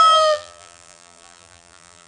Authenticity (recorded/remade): remade